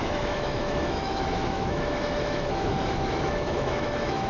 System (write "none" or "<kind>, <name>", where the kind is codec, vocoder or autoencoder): autoencoder, DAC-VAE